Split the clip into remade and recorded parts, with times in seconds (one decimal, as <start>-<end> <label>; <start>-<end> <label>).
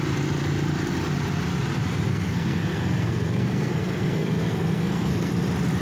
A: 0.0-2.1 recorded; 2.1-5.3 remade; 5.3-5.8 recorded